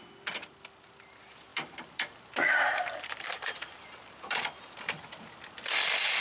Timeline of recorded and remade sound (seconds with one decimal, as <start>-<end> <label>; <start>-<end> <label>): 0.0-1.5 recorded; 1.5-4.7 remade; 4.7-6.2 recorded